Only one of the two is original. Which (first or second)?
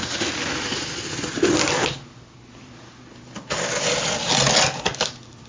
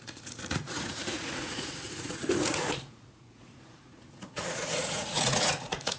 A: first